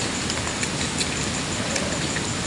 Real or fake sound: real